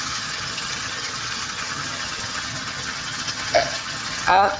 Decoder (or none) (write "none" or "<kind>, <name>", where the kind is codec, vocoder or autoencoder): vocoder, HiFi-GAN